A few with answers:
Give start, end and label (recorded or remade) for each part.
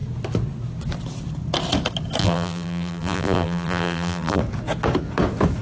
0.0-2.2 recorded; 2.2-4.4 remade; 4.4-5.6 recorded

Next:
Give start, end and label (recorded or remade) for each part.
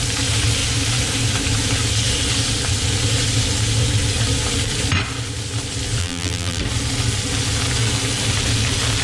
0.0-6.0 recorded; 6.0-6.6 remade; 6.6-9.0 recorded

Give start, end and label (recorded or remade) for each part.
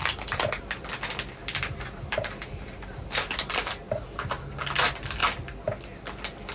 0.0-0.6 remade; 0.6-1.4 recorded; 1.4-4.4 remade; 4.4-6.5 recorded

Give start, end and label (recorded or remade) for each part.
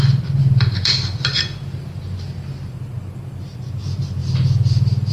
0.0-0.4 recorded; 0.4-3.5 remade; 3.5-4.2 recorded; 4.2-5.1 remade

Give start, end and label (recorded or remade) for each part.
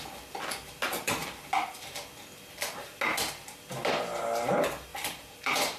0.0-4.9 recorded; 4.9-5.8 remade